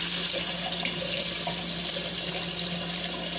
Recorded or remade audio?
recorded